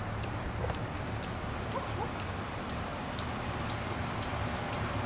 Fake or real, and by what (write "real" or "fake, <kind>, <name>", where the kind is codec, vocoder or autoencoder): fake, vocoder, BigVGAN v2